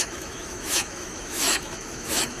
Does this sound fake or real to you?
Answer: fake